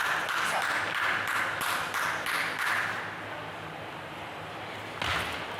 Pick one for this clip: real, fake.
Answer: real